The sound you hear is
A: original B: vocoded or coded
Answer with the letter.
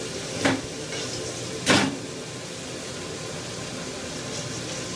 A